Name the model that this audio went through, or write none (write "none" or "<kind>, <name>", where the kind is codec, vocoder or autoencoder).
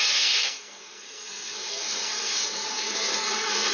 codec, SNAC